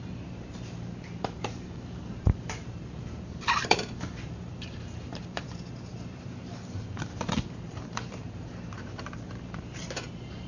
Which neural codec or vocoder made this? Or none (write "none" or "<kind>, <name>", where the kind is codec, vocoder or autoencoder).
vocoder, BigVGAN v2